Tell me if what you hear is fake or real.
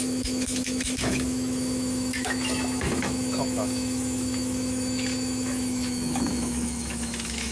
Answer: fake